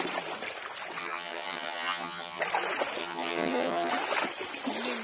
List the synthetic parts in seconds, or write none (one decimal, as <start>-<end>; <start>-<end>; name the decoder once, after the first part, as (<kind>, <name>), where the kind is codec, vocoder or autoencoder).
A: 1.0-2.4 (vocoder, HiFi-GAN); 3.0-3.9